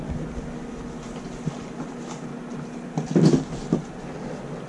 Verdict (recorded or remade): recorded